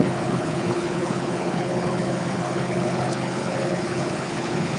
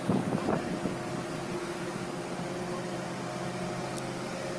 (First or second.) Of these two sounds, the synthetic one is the first